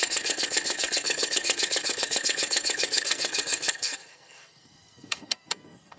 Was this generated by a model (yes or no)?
yes